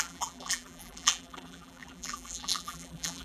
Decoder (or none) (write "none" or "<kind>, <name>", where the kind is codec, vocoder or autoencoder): vocoder, BigVGAN v2